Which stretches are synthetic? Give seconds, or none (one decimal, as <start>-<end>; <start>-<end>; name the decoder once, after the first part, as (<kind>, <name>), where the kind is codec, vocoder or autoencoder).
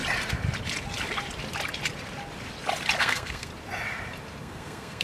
3.0-3.5 (codec, SNAC); 4.4-5.0